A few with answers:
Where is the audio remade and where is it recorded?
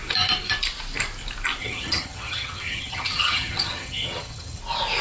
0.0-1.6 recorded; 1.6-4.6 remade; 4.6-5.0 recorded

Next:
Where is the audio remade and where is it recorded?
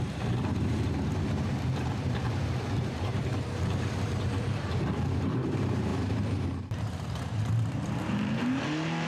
0.0-9.1 remade